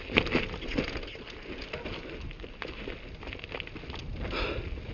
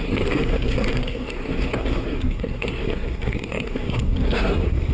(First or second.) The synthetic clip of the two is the second